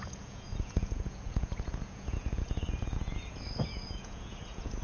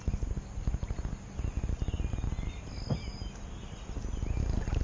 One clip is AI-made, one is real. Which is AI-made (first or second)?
first